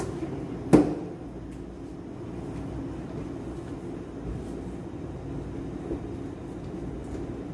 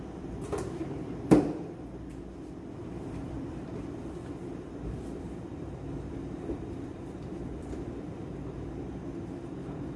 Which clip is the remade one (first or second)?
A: second